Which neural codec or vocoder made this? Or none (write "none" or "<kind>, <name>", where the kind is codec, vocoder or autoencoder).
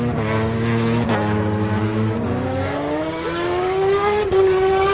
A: codec, DAC